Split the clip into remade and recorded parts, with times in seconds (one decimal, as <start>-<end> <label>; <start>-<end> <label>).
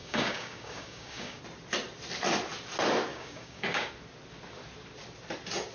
0.0-1.4 remade; 1.4-3.1 recorded; 3.1-3.9 remade; 3.9-5.7 recorded